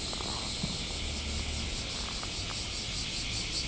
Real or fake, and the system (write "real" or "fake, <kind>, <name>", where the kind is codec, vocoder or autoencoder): real